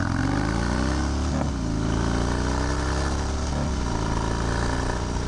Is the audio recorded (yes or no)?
yes